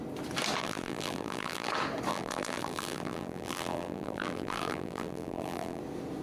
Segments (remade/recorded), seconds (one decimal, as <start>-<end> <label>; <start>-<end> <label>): 0.0-0.6 recorded; 0.6-1.7 remade; 1.7-2.1 recorded; 2.1-5.8 remade; 5.8-6.2 recorded